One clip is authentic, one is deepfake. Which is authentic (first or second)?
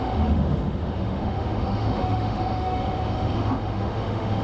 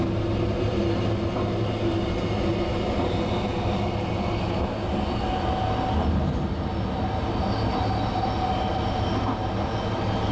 second